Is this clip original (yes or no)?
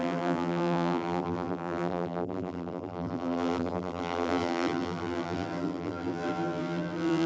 no